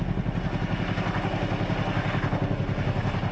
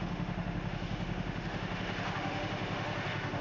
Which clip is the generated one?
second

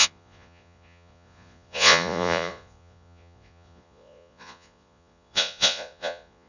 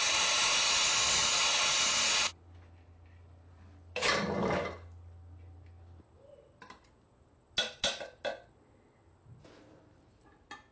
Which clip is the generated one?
first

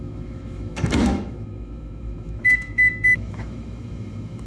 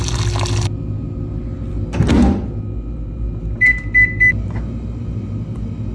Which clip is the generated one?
first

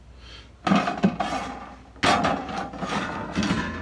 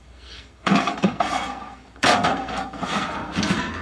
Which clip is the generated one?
second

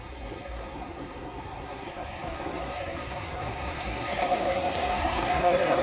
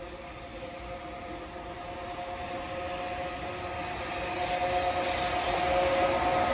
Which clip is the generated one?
first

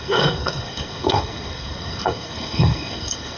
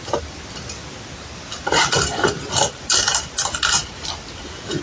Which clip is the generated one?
first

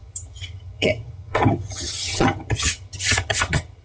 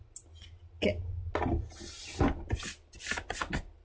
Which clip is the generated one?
first